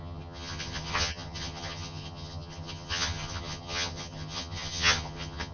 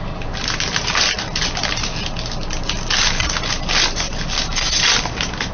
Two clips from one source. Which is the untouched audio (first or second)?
second